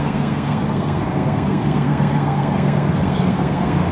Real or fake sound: fake